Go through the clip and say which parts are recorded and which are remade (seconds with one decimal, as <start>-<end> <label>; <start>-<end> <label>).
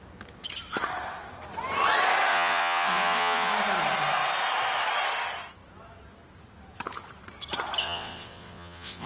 0.0-2.3 recorded; 2.3-3.5 remade; 3.5-7.8 recorded; 7.8-9.1 remade